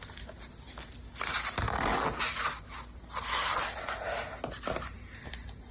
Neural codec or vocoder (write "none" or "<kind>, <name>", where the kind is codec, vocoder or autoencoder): none